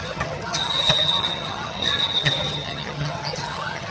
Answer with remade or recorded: remade